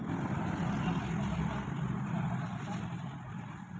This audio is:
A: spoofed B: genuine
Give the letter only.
B